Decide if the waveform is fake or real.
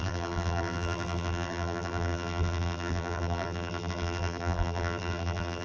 fake